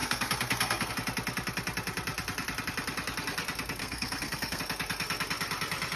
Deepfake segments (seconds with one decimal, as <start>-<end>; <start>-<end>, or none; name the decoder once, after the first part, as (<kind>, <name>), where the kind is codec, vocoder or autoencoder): 0.0-0.9 (codec, SNAC); 3.8-4.6